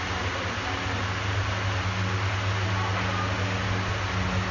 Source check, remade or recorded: recorded